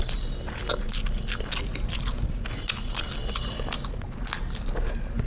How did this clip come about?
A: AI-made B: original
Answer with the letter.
B